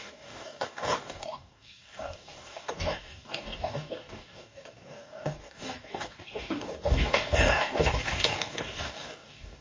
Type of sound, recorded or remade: remade